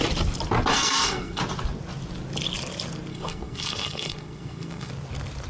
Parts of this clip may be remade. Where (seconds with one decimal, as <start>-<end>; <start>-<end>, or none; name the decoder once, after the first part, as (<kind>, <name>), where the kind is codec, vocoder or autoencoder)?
0.7-1.4 (codec, SNAC); 3.1-4.9